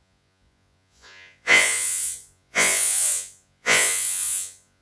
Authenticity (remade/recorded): remade